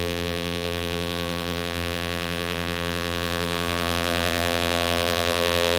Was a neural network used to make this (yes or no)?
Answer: yes